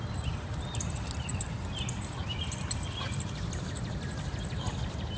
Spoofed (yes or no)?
no